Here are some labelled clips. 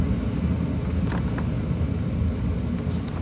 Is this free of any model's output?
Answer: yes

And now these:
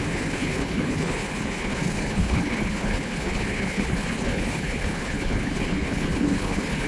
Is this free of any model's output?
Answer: no